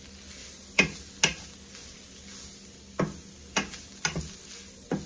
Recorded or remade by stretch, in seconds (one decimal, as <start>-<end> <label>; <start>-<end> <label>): 0.0-5.1 recorded